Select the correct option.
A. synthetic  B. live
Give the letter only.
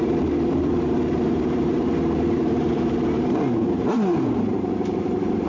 A